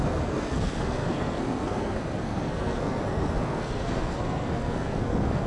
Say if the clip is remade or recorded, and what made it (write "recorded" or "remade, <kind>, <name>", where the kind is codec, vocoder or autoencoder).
remade, codec, SNAC